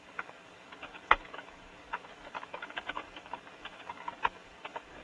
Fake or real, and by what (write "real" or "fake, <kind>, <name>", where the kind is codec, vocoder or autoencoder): fake, codec, DAC